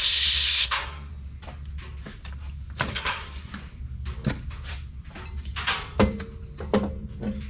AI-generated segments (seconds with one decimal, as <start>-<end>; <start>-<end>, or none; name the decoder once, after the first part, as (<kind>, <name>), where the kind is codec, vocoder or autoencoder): 0.0-1.1 (codec, SNAC); 2.9-3.5